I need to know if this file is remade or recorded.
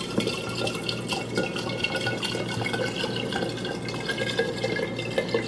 recorded